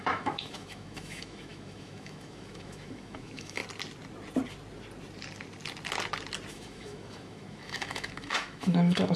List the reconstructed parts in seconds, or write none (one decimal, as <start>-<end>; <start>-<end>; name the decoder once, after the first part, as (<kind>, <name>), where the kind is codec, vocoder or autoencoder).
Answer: 0.0-3.6 (autoencoder, DAC-VAE); 6.5-9.2